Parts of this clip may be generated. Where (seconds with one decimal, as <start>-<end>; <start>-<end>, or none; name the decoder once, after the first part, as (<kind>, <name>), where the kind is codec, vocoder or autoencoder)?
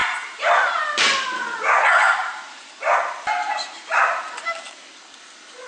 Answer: 1.9-2.7 (vocoder, BigVGAN v2)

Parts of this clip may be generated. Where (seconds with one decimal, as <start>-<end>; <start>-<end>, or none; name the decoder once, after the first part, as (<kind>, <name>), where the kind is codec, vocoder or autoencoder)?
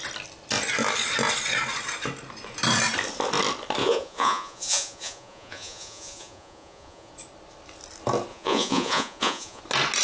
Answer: 3.8-7.1 (vocoder, Vocos); 8.3-9.6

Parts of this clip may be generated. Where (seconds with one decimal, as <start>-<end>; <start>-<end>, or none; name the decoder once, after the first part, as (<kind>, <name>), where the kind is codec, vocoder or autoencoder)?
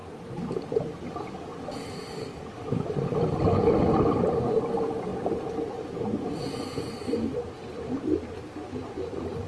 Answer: 1.5-3.3 (vocoder, BigVGAN v2); 5.1-7.8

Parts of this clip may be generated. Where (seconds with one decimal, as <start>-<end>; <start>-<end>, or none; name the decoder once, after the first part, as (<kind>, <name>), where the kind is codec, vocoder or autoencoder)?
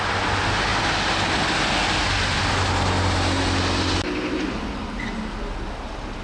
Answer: none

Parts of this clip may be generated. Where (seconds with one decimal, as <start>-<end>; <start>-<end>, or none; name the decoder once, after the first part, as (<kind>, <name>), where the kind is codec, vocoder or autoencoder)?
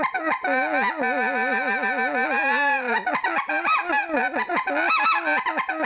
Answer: none